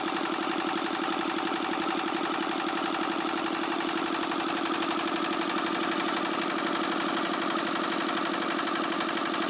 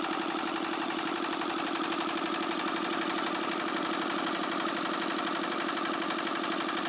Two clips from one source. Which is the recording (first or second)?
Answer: first